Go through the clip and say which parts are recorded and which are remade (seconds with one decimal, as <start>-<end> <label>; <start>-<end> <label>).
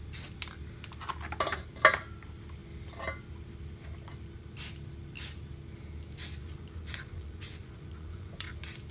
0.0-6.4 recorded; 6.4-8.5 remade; 8.5-8.9 recorded